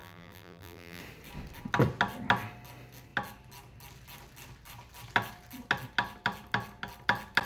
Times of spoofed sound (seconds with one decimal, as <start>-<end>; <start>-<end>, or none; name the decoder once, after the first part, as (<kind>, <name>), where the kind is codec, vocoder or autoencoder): 0.0-1.0 (vocoder, BigVGAN v2)